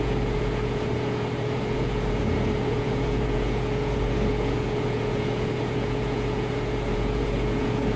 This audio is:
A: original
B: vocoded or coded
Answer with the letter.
B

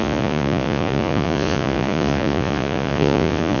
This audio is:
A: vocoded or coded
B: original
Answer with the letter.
A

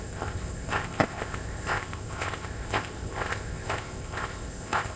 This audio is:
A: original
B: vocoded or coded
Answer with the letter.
B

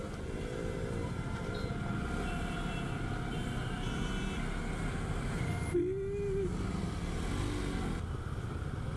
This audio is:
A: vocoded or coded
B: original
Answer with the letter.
B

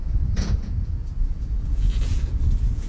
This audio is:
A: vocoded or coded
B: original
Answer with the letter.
A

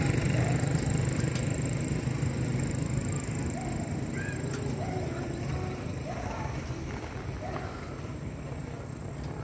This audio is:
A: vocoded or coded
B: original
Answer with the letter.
A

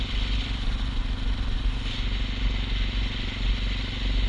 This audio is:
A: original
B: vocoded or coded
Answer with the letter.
A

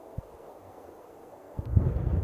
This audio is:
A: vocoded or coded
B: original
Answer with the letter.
A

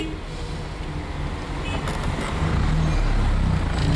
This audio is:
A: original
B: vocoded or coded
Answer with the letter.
A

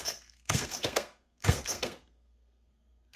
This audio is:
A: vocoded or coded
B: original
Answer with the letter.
A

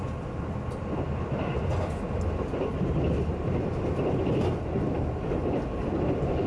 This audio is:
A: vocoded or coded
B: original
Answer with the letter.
B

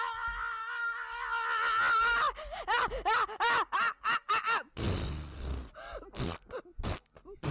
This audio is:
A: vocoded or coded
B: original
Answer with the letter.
B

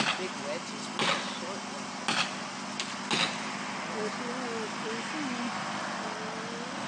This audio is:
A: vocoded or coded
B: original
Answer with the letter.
B